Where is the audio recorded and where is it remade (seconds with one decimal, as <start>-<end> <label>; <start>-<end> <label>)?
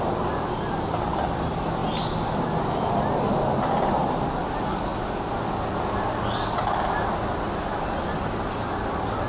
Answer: 0.0-9.3 recorded